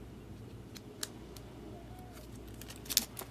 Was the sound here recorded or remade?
recorded